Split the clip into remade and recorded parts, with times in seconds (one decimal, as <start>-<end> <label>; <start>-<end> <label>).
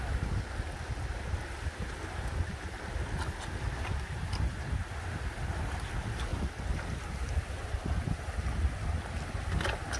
0.0-6.3 recorded; 6.3-9.1 remade; 9.1-10.0 recorded